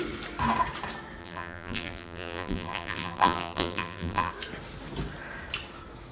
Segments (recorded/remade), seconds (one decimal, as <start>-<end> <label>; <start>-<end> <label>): 0.0-1.2 recorded; 1.2-4.3 remade; 4.3-6.1 recorded